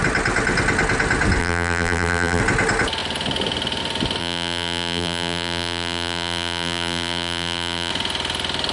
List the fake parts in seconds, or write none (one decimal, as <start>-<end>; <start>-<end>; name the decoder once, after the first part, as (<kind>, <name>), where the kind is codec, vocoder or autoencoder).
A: 1.4-2.4 (vocoder, BigVGAN v2); 4.2-7.9